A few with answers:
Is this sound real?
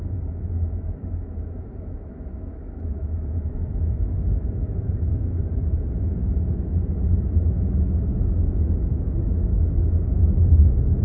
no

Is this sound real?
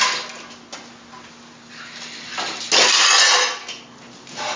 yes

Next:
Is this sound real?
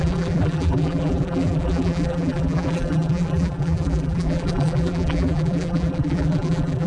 no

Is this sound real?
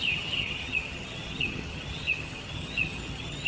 no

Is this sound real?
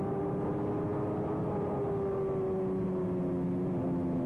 yes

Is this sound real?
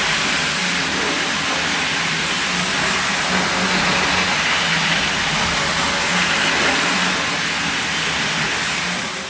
yes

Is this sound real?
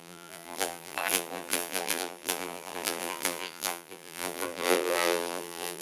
no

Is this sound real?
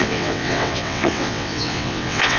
no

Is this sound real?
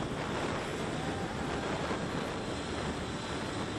yes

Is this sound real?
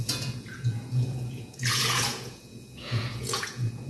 no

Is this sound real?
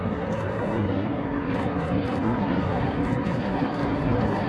no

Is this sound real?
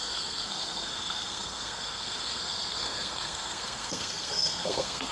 no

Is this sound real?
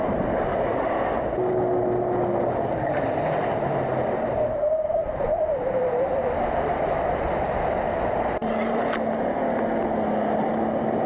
yes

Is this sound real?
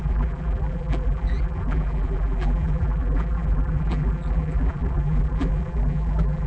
no